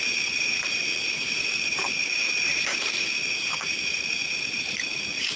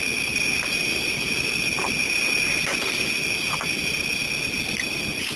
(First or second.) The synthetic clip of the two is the first